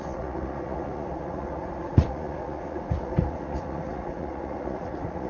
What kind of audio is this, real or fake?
fake